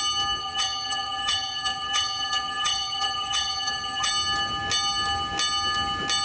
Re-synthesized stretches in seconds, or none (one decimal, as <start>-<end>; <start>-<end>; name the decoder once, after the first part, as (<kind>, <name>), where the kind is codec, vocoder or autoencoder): 0.4-4.1 (vocoder, HiFi-GAN)